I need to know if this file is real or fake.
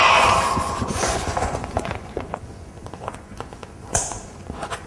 fake